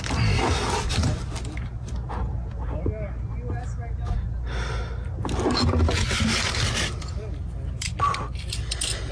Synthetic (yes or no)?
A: no